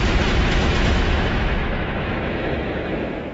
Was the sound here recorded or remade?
remade